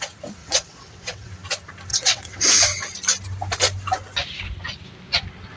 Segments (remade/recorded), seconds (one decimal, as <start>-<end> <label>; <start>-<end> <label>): 0.0-0.4 recorded; 0.4-1.3 remade; 1.3-1.9 recorded; 1.9-2.5 remade; 2.5-5.6 recorded